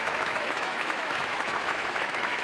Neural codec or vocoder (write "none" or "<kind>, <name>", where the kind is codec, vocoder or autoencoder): autoencoder, DAC-VAE